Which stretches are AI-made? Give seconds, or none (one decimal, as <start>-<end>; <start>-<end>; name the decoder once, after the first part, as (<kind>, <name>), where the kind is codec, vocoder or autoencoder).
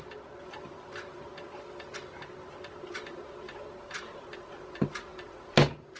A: none